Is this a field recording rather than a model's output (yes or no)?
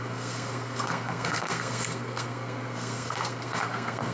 no